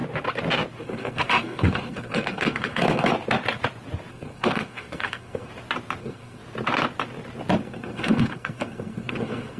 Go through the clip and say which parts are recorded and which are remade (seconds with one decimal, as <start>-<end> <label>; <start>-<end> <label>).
0.0-0.8 recorded; 0.8-3.1 remade; 3.1-4.1 recorded; 4.1-5.5 remade; 5.5-6.0 recorded; 6.0-6.4 remade; 6.4-7.6 recorded; 7.6-9.6 remade